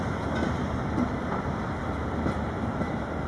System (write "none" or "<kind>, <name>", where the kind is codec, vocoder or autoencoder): vocoder, BigVGAN v2